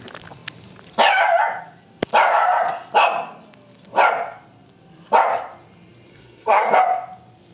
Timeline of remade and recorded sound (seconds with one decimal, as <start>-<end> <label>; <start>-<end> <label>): 0.0-6.1 recorded; 6.1-6.7 remade; 6.7-7.5 recorded